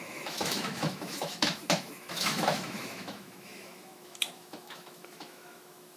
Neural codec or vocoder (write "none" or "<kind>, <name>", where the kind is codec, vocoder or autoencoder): autoencoder, DAC-VAE